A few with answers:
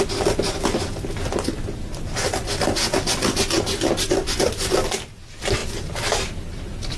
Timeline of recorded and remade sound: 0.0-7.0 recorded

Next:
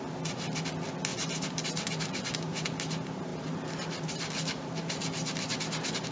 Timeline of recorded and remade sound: 0.0-3.3 recorded; 3.3-6.1 remade

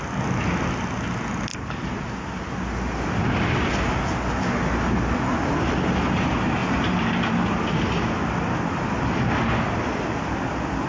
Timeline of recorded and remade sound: 0.0-10.9 recorded

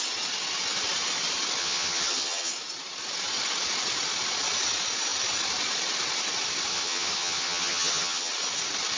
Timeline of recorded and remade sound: 0.0-1.6 recorded; 1.6-2.5 remade; 2.5-6.7 recorded; 6.7-8.3 remade; 8.3-9.0 recorded

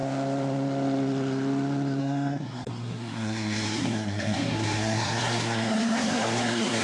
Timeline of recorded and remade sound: 0.0-2.0 recorded; 2.0-6.8 remade